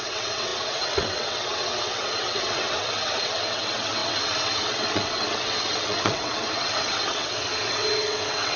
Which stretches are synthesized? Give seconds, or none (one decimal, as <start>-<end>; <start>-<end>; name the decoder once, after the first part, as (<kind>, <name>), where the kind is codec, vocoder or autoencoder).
0.0-8.6 (vocoder, WaveNeXt)